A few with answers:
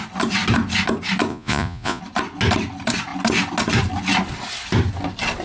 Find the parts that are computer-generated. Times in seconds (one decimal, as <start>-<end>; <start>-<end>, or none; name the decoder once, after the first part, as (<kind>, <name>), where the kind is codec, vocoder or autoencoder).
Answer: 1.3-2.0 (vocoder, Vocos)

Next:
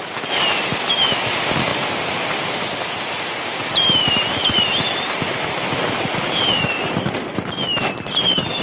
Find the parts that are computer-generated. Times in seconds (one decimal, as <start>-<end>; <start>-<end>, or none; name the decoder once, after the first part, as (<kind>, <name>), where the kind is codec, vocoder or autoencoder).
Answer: none

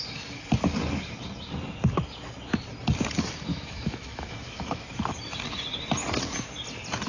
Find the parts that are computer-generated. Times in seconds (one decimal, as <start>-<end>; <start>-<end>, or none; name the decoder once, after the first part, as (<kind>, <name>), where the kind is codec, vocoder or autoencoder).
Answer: 3.5-5.2 (autoencoder, DAC-VAE)

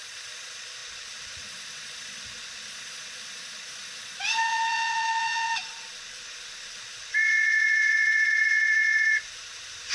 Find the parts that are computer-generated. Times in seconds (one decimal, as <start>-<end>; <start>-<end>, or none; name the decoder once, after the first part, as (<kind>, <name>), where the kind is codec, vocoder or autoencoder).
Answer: 0.0-9.9 (vocoder, Vocos)

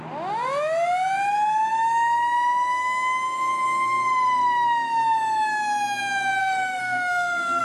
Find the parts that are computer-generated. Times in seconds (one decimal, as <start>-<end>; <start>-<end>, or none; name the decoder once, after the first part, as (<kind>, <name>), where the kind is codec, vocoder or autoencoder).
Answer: 6.4-7.6 (codec, SNAC)